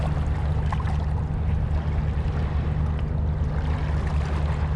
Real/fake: real